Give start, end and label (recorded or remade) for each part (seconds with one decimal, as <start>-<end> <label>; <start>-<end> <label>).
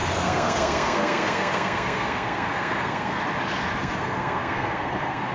0.0-3.2 remade; 3.2-3.8 recorded; 3.8-5.3 remade